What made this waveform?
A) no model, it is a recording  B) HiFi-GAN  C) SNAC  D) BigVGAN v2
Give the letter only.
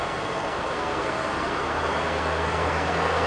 C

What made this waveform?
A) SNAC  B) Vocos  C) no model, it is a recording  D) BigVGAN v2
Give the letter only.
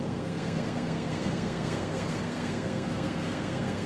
A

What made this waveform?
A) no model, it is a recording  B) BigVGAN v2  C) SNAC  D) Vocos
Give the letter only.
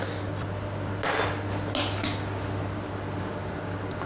A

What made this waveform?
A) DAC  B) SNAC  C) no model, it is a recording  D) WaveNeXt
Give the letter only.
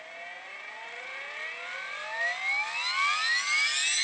C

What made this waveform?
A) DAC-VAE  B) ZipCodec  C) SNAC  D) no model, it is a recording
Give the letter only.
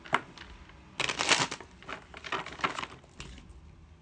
D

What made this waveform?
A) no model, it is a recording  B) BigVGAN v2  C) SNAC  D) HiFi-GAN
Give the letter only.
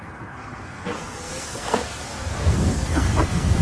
C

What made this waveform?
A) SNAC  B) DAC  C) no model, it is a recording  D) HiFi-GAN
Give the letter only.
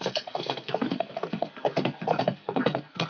A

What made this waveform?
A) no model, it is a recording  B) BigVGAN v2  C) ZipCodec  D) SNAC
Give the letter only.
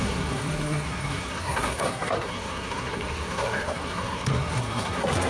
D